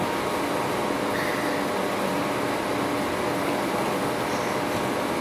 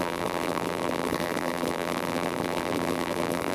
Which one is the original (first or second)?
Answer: first